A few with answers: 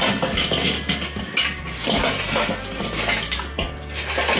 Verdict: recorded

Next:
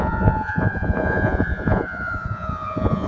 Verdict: remade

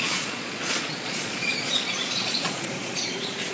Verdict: remade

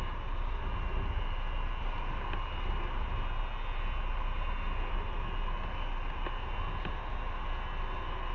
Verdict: recorded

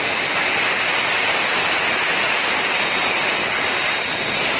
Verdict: recorded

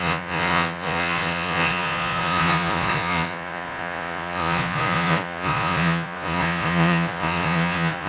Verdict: remade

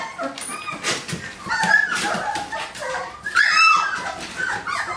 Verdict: recorded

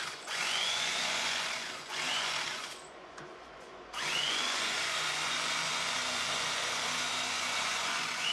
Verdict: remade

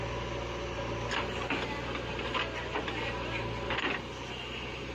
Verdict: recorded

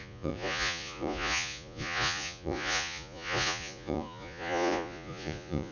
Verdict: remade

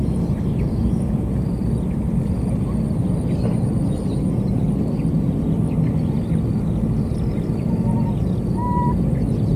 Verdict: recorded